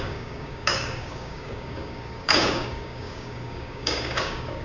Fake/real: fake